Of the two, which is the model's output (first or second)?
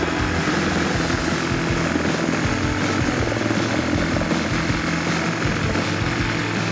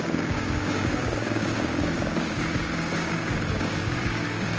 second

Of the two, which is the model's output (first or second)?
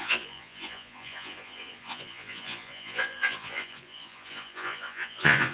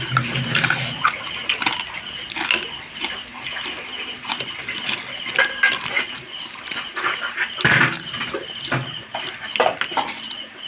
first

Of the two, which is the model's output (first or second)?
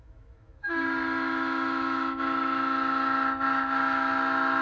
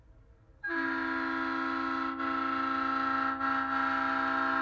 first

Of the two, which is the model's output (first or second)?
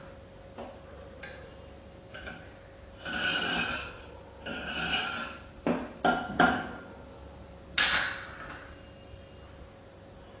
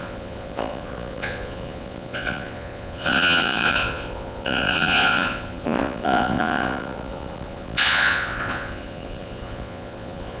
second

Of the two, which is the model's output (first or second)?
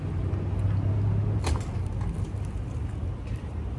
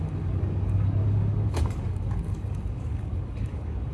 second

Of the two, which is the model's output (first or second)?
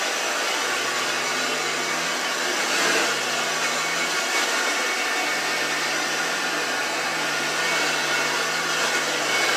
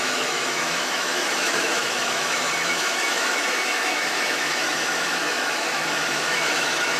second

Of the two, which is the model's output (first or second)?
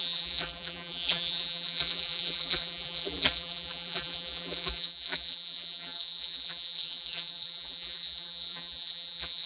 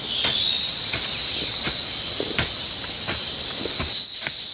first